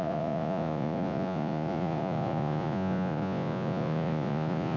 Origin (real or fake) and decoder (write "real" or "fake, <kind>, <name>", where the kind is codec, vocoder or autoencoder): fake, vocoder, Vocos